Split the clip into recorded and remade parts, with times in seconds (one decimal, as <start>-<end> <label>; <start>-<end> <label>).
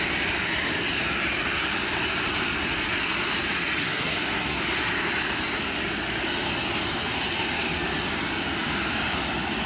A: 0.0-3.8 recorded; 3.8-4.6 remade; 4.6-9.7 recorded